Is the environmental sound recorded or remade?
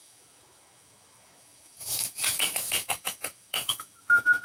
remade